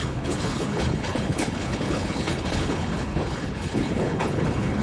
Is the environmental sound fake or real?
fake